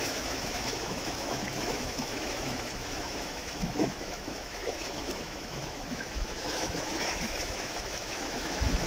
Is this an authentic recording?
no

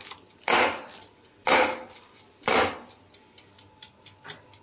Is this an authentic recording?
yes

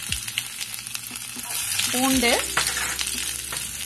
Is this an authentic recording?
yes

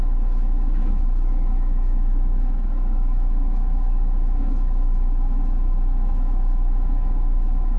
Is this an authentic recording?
no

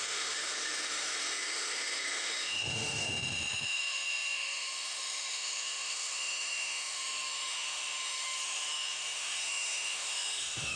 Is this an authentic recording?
no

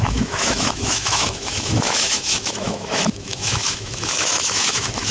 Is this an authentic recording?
no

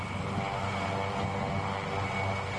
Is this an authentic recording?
yes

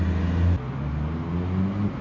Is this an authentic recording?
yes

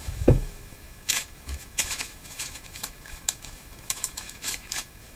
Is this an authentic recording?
no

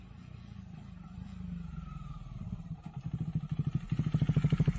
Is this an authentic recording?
yes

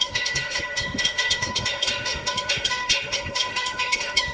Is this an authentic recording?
no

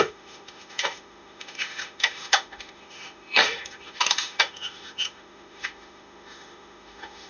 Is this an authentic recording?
no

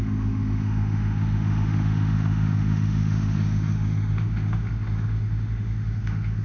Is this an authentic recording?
no